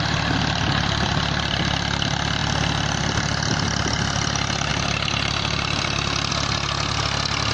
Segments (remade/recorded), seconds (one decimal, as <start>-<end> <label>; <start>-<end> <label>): 0.0-4.7 recorded; 4.7-6.3 remade; 6.3-7.5 recorded